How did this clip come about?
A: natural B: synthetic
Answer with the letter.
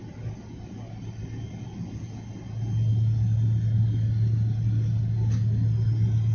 A